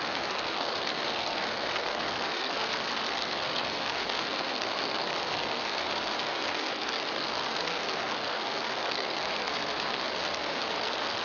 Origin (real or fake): fake